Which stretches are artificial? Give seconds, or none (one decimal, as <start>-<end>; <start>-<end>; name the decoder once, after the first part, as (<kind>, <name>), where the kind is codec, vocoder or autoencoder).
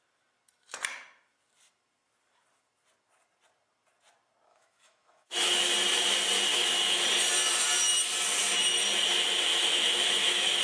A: 4.5-5.7 (autoencoder, DAC-VAE); 6.5-7.0; 9.5-10.6